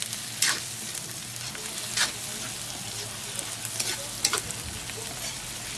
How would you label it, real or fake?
real